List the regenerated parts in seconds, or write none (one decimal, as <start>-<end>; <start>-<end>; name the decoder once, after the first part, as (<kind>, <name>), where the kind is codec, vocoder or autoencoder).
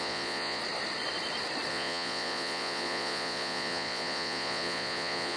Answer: 0.0-0.6 (vocoder, Vocos); 1.7-5.4